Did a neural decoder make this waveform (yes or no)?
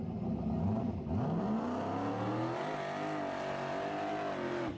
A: no